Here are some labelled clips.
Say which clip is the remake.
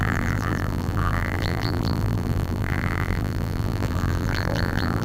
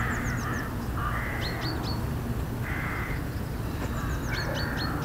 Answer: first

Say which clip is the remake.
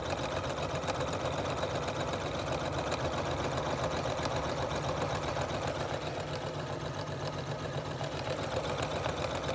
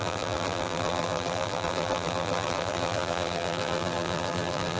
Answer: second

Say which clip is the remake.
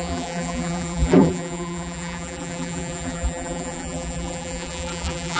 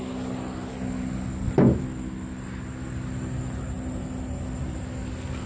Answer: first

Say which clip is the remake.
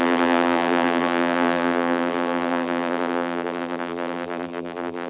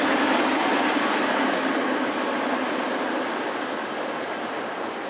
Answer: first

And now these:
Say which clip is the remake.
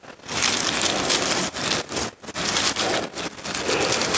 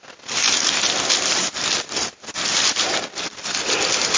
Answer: second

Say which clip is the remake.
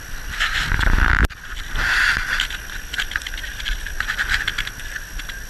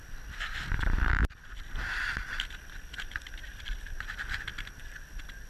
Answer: second